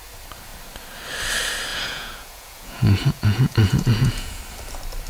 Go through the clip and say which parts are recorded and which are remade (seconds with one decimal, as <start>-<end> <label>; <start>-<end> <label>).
0.0-1.7 recorded; 1.7-4.4 remade; 4.4-5.1 recorded